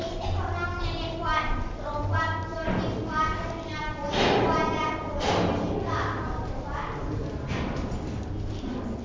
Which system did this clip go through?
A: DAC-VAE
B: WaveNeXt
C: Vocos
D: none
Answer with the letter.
D